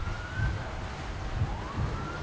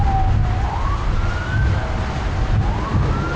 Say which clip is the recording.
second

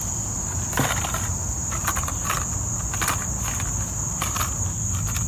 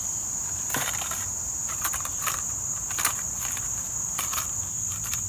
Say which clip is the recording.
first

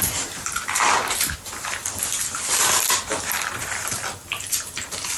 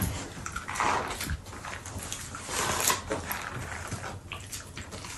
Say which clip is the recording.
second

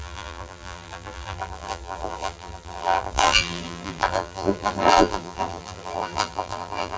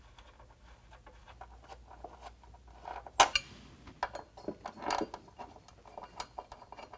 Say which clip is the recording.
second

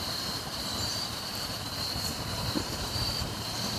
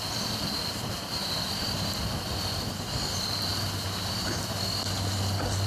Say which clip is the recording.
second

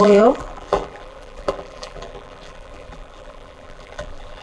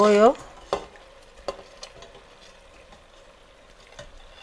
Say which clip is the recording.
second